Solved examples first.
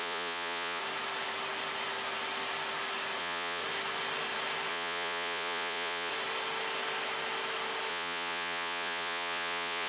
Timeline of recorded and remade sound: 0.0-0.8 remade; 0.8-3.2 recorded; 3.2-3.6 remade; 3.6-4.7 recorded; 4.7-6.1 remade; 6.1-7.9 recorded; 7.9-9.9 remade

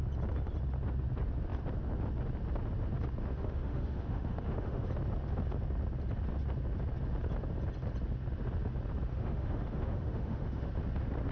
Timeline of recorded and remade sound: 0.0-3.2 recorded; 3.2-4.9 remade; 4.9-9.1 recorded; 9.1-10.7 remade; 10.7-11.3 recorded

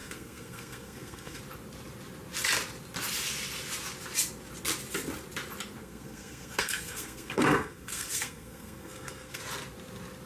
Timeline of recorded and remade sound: 0.0-1.4 remade; 1.4-5.8 recorded; 5.8-9.4 remade; 9.4-10.3 recorded

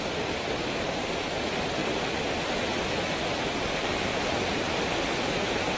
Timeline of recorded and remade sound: 0.0-1.8 remade; 1.8-5.3 recorded; 5.3-5.8 remade

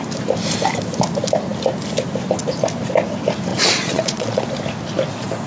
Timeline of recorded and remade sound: 0.0-3.5 recorded; 3.5-4.4 remade; 4.4-5.5 recorded